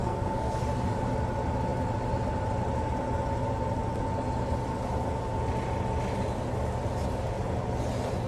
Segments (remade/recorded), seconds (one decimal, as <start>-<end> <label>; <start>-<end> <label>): 0.0-0.6 remade; 0.6-8.3 recorded